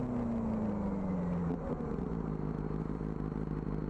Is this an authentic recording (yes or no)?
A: yes